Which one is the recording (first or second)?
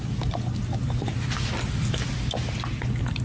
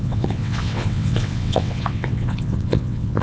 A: first